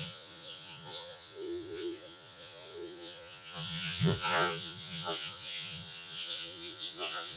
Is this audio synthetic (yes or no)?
yes